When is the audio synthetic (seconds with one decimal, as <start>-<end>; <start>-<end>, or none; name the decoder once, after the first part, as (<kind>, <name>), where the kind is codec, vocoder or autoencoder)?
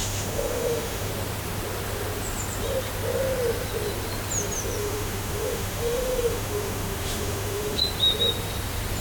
0.0-1.1 (autoencoder, DAC-VAE); 4.8-7.8